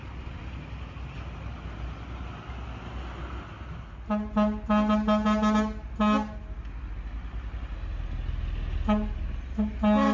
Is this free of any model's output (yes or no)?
yes